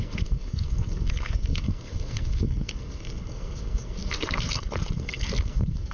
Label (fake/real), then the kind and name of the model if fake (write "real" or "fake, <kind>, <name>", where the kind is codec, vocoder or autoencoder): fake, codec, SNAC